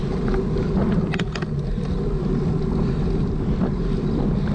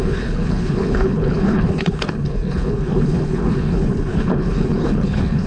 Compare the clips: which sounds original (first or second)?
first